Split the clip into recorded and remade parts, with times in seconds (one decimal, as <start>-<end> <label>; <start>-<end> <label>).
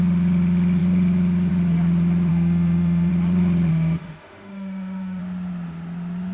0.0-2.3 recorded; 2.3-3.1 remade; 3.1-3.7 recorded; 3.7-5.2 remade; 5.2-6.3 recorded